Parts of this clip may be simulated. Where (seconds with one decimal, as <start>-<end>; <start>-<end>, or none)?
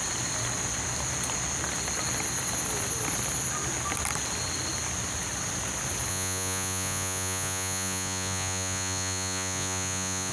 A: 6.1-10.3